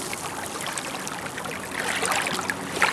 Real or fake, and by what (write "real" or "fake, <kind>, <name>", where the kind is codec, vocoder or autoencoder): real